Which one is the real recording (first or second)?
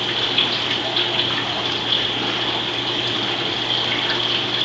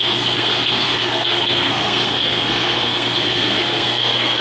first